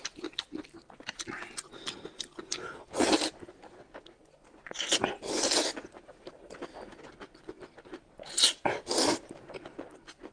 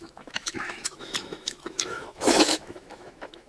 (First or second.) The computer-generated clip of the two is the second